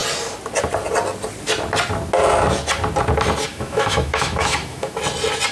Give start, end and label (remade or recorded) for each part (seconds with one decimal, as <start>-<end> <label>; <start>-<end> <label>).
0.0-3.5 recorded; 3.5-5.0 remade; 5.0-5.5 recorded